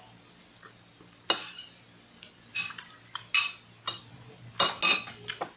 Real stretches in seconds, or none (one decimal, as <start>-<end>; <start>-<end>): 0.0-5.6